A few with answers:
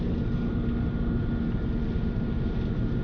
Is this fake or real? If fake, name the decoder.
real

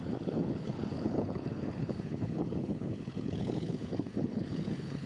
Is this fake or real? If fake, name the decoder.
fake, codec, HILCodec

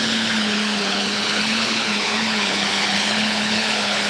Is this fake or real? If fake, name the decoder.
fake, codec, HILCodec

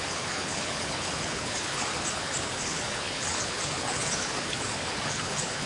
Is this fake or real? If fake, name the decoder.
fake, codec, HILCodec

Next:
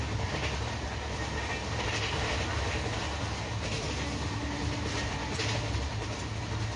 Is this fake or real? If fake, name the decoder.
real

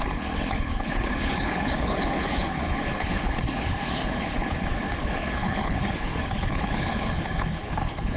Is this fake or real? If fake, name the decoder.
fake, codec, HILCodec